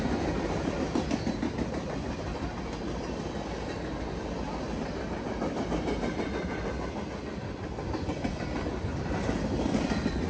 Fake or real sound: real